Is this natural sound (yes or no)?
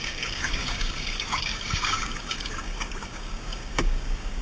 no